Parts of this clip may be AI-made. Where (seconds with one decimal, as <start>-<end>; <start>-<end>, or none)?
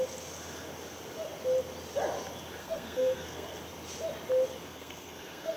2.6-3.6; 4.6-5.6